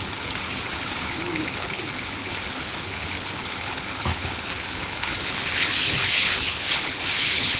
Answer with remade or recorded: remade